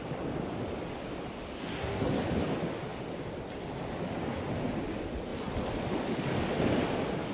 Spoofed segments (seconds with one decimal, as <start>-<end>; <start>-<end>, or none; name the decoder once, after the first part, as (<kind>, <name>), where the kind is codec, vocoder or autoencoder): 1.7-2.2 (codec, SNAC)